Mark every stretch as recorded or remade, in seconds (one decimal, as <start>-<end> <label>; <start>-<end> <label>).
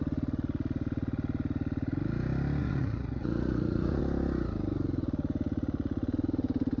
0.0-2.6 recorded; 2.6-4.0 remade; 4.0-6.8 recorded